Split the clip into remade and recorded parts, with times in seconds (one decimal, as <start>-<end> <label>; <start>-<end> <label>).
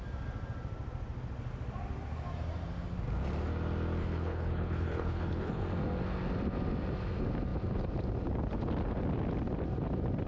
0.0-4.0 recorded; 4.0-5.6 remade; 5.6-10.3 recorded